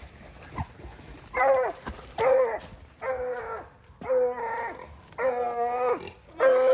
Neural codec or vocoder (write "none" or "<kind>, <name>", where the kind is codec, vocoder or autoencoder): none